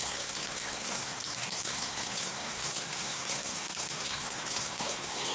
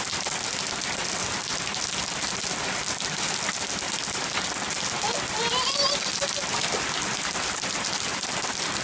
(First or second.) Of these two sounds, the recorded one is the second